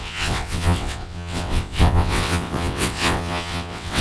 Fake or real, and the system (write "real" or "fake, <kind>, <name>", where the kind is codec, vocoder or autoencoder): fake, vocoder, WaveNeXt